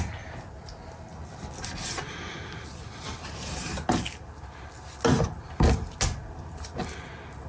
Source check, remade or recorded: recorded